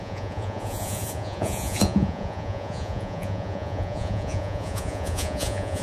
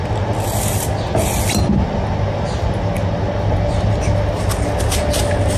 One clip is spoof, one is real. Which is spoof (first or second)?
first